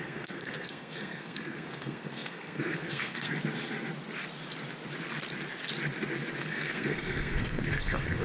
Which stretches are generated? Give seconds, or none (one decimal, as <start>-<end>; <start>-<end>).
0.0-3.4; 6.4-8.2